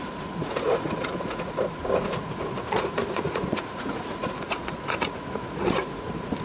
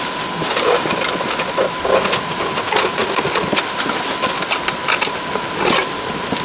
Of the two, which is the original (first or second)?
second